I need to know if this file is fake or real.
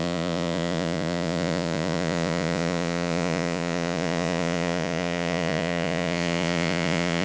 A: fake